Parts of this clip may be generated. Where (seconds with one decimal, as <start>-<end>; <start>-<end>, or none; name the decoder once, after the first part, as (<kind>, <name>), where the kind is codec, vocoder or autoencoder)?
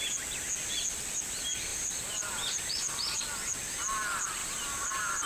1.7-2.8 (vocoder, BigVGAN v2); 4.4-5.3